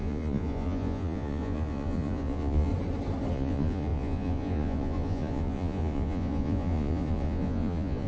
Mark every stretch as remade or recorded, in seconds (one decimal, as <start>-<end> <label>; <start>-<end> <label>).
0.0-2.7 remade; 2.7-3.3 recorded; 3.3-8.1 remade